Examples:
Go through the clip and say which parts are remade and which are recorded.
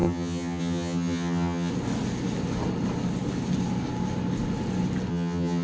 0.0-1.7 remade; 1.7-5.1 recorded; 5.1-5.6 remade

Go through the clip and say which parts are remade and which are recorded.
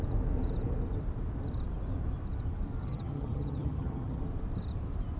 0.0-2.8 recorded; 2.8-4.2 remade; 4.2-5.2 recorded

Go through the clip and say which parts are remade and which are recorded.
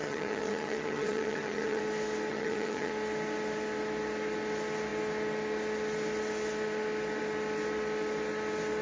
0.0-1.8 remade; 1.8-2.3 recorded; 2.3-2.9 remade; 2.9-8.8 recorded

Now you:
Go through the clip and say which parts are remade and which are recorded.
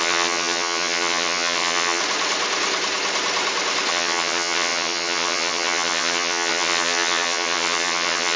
0.0-2.0 remade; 2.0-3.9 recorded; 3.9-8.4 remade